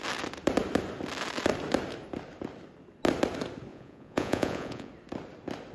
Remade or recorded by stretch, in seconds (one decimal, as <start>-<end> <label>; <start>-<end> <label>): 0.0-3.7 recorded; 3.7-4.9 remade; 4.9-5.7 recorded